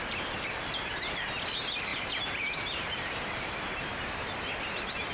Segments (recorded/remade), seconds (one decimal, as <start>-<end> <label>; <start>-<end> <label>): 0.0-1.9 recorded; 1.9-3.7 remade; 3.7-5.1 recorded

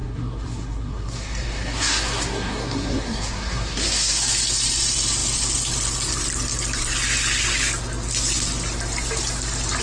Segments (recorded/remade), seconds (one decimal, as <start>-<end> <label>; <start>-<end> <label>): 0.0-4.2 remade; 4.2-9.8 recorded